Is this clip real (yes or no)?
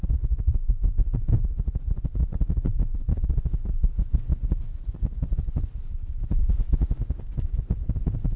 yes